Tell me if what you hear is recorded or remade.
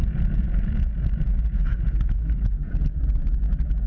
remade